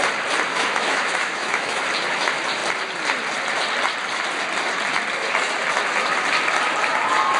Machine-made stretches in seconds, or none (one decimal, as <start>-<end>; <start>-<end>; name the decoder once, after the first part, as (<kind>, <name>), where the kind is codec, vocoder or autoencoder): 0.5-1.9 (autoencoder, DAC-VAE)